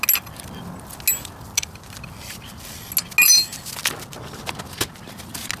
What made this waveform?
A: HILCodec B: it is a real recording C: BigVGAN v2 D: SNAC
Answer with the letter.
B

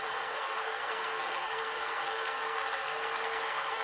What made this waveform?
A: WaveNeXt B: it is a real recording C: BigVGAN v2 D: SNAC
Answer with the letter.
D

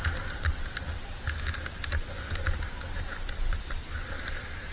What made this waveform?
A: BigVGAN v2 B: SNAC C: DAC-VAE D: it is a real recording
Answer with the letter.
D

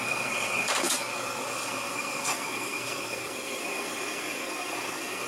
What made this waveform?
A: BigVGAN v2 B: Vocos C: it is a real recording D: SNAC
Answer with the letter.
D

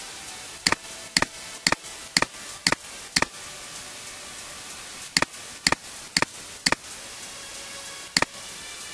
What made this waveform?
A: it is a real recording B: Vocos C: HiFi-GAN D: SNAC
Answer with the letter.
A